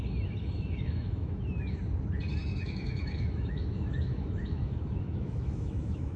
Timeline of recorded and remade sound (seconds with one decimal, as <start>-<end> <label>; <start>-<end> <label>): 0.0-0.4 recorded; 0.4-1.8 remade; 1.8-2.4 recorded; 2.4-6.2 remade